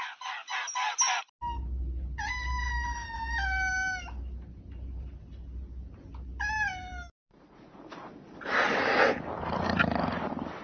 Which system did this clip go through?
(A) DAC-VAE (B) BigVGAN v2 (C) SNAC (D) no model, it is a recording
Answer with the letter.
D